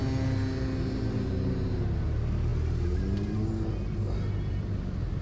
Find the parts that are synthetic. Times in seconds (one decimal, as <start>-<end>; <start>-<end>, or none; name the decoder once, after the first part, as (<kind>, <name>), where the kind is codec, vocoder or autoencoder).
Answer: none